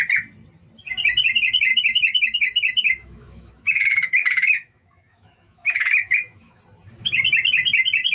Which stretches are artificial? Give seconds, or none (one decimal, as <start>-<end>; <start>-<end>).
1.7-6.6